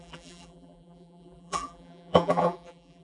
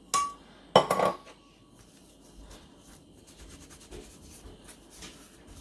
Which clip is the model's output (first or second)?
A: first